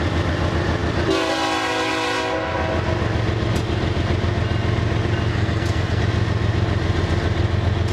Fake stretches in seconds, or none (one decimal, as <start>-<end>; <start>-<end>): 5.3-6.0